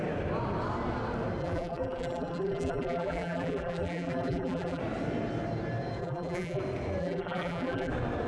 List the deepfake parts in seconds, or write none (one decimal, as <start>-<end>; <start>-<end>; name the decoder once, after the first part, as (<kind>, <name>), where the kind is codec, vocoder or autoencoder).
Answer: 1.4-4.8 (vocoder, BigVGAN v2); 6.0-6.6; 7.0-7.9